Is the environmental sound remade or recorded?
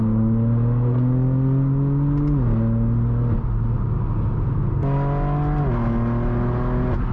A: recorded